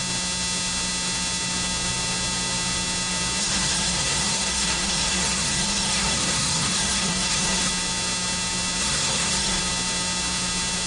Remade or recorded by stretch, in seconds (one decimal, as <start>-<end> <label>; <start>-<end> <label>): 0.0-3.4 recorded; 3.4-7.7 remade; 7.7-8.8 recorded; 8.8-9.6 remade; 9.6-10.9 recorded